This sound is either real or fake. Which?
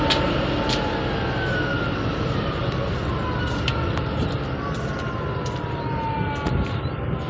real